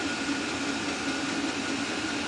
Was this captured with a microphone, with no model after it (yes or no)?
yes